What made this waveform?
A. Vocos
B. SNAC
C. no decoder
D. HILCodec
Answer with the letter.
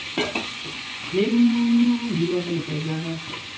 A